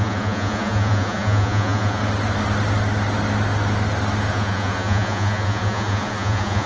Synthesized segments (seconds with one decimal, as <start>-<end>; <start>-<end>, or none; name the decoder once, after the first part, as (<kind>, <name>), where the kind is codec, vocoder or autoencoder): 0.0-2.0 (vocoder, Vocos); 4.3-6.7

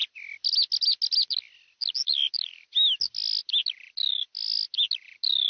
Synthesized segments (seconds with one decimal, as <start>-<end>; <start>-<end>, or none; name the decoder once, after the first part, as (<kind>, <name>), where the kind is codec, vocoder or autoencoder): none